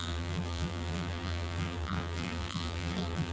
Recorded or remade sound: remade